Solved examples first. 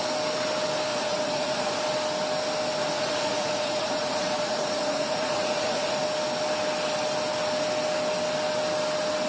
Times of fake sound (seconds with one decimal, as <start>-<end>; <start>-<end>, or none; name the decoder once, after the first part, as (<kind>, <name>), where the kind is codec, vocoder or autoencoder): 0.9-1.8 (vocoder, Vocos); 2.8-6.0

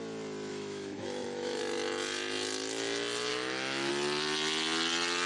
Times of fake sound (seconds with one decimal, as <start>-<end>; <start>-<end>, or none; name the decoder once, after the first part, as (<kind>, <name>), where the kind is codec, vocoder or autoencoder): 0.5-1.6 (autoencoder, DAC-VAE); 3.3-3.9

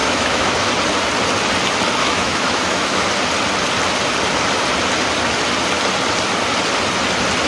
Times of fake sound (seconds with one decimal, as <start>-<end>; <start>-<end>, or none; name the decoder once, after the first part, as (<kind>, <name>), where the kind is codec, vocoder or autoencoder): 0.0-0.7 (autoencoder, DAC-VAE); 2.0-3.1

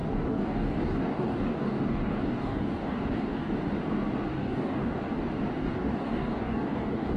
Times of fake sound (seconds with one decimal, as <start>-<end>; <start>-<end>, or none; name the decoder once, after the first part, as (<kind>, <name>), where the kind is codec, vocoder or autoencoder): 0.0-3.5 (codec, DAC); 4.3-5.1; 5.6-7.2

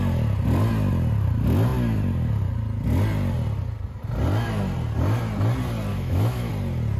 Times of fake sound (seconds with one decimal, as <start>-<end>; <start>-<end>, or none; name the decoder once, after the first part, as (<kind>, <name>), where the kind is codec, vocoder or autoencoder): 5.9-6.5 (autoencoder, DAC-VAE)